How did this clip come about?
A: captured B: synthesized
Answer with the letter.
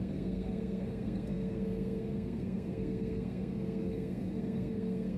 B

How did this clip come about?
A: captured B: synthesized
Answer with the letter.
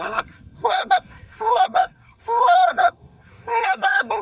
B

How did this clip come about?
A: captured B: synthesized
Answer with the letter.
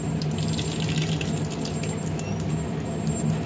A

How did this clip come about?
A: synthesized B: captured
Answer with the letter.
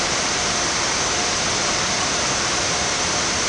B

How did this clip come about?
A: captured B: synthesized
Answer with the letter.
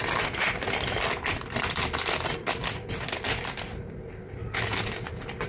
A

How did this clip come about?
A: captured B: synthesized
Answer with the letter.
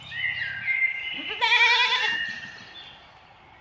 A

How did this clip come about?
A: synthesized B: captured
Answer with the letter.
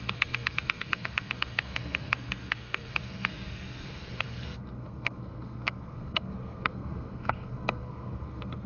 A